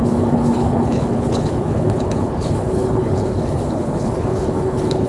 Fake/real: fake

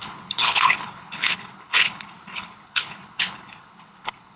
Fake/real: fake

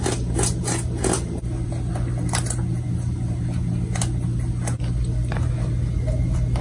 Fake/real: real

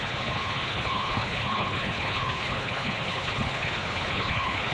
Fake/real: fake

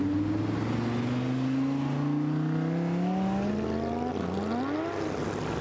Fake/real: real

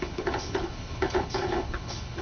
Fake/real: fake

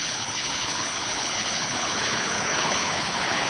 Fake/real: fake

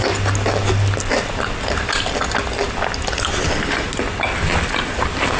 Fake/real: real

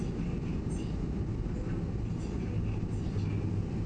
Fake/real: real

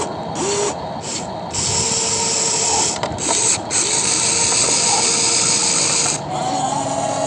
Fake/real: real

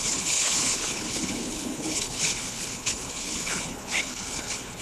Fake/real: fake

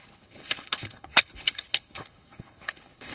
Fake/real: fake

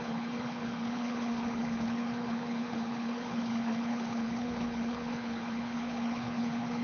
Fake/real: fake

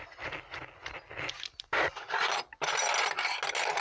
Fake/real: real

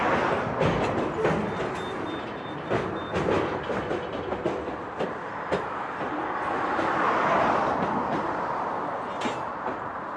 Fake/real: real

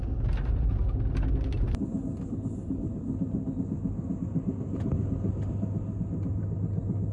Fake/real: real